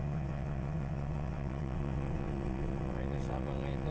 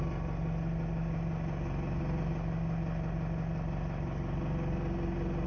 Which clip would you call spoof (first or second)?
first